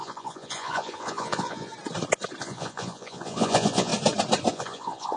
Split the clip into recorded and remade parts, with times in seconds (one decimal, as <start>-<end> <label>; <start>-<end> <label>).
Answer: 0.0-1.7 remade; 1.7-2.4 recorded; 2.4-3.9 remade; 3.9-4.5 recorded; 4.5-5.2 remade

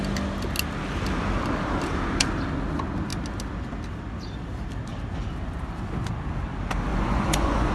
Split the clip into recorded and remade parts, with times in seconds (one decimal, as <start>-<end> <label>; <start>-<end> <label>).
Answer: 0.0-6.9 recorded; 6.9-7.7 remade